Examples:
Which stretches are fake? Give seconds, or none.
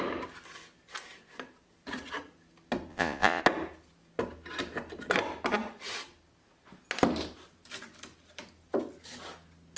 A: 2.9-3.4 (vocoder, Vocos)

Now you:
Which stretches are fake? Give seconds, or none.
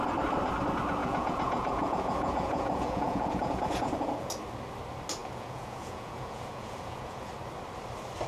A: 1.0-4.3 (vocoder, Vocos); 5.2-7.3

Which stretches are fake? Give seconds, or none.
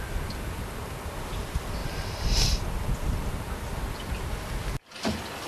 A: none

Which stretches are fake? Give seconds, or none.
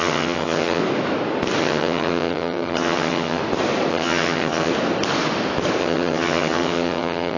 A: 0.0-0.8 (vocoder, HiFi-GAN); 1.6-3.4; 3.9-4.7; 5.8-7.4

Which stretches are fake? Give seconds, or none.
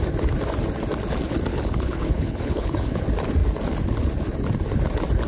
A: 1.5-3.0 (codec, HILCodec)